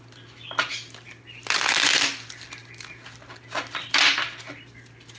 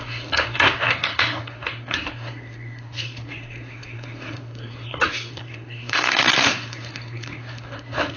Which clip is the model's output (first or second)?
second